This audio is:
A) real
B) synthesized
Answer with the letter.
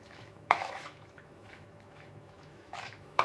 B